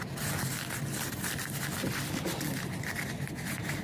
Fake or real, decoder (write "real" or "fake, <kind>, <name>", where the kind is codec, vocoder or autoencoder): real